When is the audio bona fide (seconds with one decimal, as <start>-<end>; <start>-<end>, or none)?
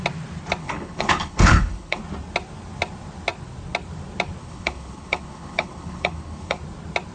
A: 0.0-0.6; 2.0-4.4; 6.6-7.1